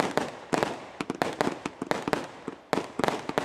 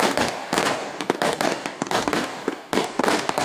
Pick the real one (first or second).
first